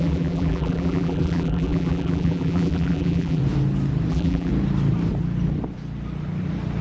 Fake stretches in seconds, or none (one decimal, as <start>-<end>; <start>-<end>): 0.0-3.4; 4.1-4.5